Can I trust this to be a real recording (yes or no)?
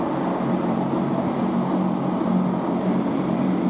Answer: yes